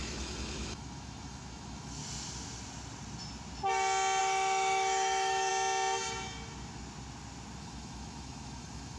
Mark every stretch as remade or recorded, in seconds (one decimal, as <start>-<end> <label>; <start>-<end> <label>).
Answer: 0.0-2.0 remade; 2.0-4.2 recorded; 4.2-5.5 remade; 5.5-7.6 recorded; 7.6-9.0 remade

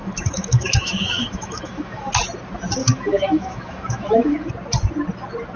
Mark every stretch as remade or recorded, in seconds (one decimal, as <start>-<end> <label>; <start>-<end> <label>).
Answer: 0.0-2.1 remade; 2.1-2.8 recorded; 2.8-4.5 remade; 4.5-5.6 recorded

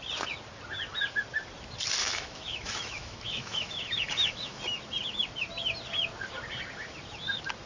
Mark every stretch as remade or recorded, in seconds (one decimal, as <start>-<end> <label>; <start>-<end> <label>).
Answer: 0.0-2.0 recorded; 2.0-4.6 remade; 4.6-7.7 recorded

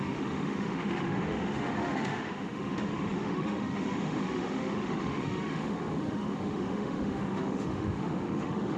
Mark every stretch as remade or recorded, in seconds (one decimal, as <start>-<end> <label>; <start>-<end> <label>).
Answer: 0.0-8.8 remade

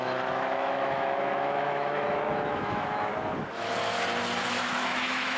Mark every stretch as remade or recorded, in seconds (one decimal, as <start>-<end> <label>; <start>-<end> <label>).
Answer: 0.0-3.1 remade; 3.1-4.4 recorded; 4.4-5.4 remade

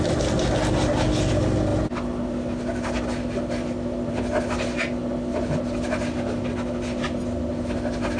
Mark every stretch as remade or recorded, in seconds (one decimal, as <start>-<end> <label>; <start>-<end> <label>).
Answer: 0.0-8.2 recorded